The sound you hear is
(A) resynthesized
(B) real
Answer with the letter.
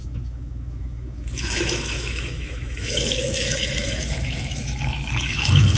A